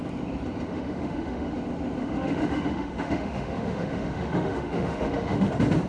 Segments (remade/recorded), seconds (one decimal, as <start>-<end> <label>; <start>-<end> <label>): 0.0-0.7 recorded; 0.7-1.5 remade; 1.5-2.0 recorded; 2.0-5.5 remade; 5.5-5.9 recorded